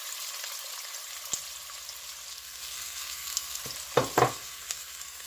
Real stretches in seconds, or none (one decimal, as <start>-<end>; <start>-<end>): 0.0-2.3; 3.6-4.3